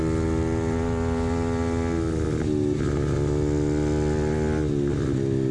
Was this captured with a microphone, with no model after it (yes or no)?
yes